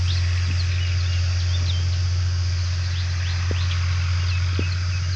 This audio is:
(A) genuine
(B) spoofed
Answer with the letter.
A